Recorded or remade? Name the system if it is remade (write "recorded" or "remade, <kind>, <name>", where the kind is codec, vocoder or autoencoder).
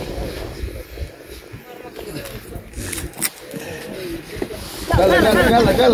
recorded